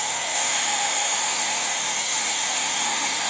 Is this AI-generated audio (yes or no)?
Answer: yes